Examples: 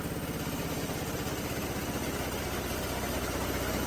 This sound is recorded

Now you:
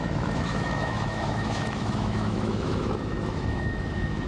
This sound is remade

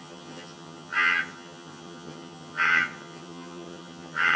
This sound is remade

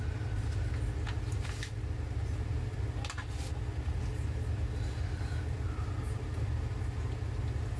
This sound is recorded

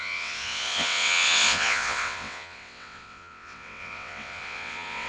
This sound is remade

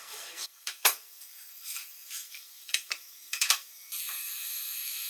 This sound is remade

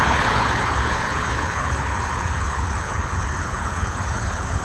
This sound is remade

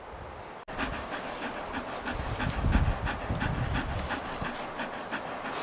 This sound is recorded